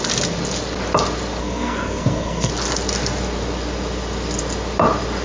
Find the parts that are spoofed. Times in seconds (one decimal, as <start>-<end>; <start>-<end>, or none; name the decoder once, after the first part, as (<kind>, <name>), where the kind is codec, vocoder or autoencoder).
1.4-2.5 (codec, SNAC)